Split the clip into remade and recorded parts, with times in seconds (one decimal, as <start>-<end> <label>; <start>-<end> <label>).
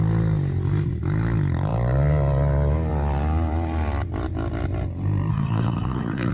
0.0-5.3 recorded; 5.3-6.3 remade